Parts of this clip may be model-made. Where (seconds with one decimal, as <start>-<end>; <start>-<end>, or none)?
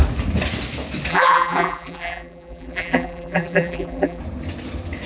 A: 1.1-4.2